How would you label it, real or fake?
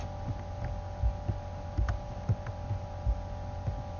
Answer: real